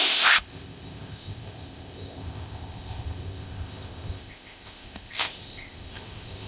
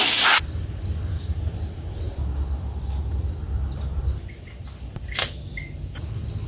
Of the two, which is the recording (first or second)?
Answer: second